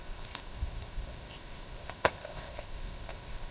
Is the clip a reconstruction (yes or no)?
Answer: yes